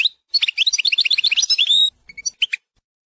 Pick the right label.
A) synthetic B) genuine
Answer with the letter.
B